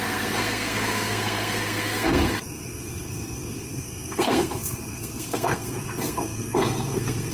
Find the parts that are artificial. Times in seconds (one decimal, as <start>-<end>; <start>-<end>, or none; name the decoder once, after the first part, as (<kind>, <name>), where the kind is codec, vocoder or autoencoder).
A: 0.0-7.3 (codec, SNAC)